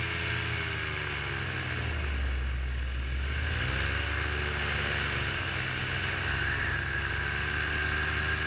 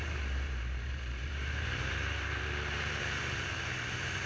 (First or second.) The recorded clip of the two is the first